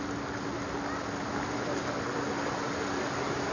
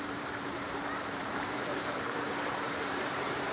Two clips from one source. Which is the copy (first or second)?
second